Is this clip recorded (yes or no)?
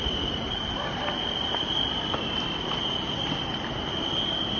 yes